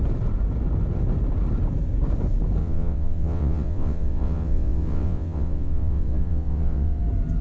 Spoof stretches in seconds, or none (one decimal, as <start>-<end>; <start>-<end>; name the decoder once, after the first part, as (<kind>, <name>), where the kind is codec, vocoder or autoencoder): 2.6-7.0 (vocoder, WaveNeXt)

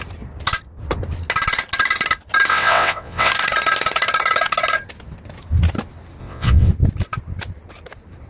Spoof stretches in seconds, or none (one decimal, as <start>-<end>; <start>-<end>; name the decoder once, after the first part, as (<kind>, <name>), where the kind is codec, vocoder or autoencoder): 2.5-3.3 (vocoder, WaveNeXt); 6.2-6.7

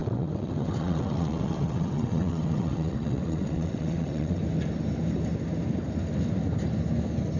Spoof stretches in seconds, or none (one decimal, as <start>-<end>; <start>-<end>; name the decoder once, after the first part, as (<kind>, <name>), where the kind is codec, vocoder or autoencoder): 0.0-4.4 (vocoder, WaveNeXt)

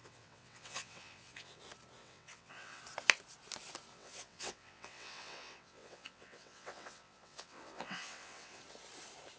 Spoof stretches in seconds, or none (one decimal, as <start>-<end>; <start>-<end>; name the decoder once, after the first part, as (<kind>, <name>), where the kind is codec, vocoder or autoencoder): 0.0-1.6 (vocoder, WaveNeXt); 2.0-2.8; 3.9-8.6

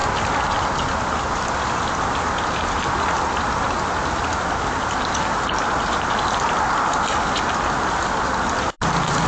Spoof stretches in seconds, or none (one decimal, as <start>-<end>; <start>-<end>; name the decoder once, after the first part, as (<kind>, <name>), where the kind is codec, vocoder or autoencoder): none

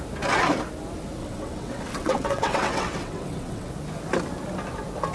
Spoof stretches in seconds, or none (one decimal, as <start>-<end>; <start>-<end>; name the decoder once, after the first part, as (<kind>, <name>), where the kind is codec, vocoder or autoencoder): 1.2-3.7 (vocoder, WaveNeXt)

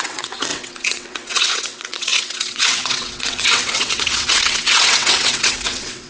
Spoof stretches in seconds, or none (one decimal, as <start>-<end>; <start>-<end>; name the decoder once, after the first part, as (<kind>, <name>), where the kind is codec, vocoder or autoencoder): 0.0-6.1 (vocoder, WaveNeXt)